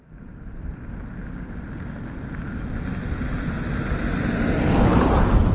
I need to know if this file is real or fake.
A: real